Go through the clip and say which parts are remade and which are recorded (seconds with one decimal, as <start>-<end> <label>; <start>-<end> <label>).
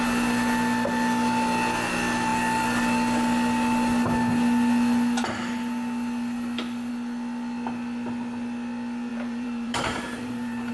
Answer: 0.0-9.1 recorded; 9.1-10.7 remade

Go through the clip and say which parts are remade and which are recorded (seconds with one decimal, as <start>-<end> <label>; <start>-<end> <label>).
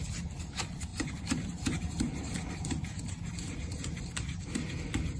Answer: 0.0-0.9 recorded; 0.9-4.0 remade; 4.0-5.2 recorded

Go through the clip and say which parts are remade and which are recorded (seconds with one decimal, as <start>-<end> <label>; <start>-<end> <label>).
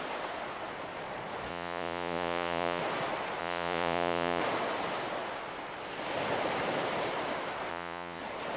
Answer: 0.0-1.5 recorded; 1.5-2.8 remade; 2.8-3.4 recorded; 3.4-4.4 remade; 4.4-7.7 recorded; 7.7-8.2 remade; 8.2-8.6 recorded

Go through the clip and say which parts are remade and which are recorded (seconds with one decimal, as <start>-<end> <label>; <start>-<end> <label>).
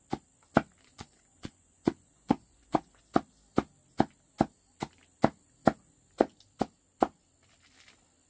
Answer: 0.0-0.9 recorded; 0.9-3.0 remade; 3.0-8.3 recorded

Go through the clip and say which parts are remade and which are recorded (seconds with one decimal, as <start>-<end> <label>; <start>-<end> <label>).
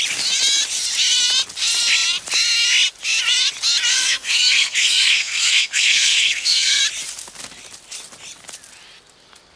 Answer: 0.0-3.9 recorded; 3.9-6.8 remade; 6.8-9.6 recorded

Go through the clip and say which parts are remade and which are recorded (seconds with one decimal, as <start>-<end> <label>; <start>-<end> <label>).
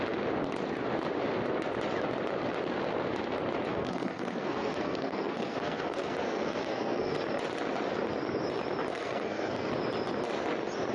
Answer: 0.0-3.7 recorded; 3.7-7.2 remade; 7.2-8.9 recorded; 8.9-9.7 remade; 9.7-10.9 recorded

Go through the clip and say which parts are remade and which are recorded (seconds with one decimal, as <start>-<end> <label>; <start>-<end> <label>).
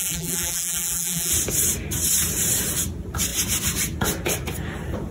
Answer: 0.0-1.3 remade; 1.3-5.1 recorded